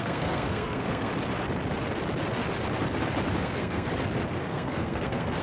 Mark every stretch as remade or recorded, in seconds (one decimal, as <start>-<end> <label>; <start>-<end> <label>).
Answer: 0.0-1.1 remade; 1.1-3.4 recorded; 3.4-3.9 remade; 3.9-4.4 recorded; 4.4-5.4 remade